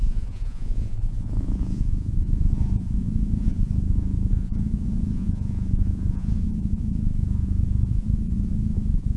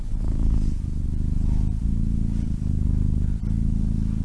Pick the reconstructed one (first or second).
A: first